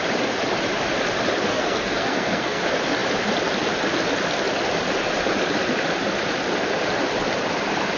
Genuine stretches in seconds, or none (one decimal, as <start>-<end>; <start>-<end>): 0.0-1.5; 2.6-8.0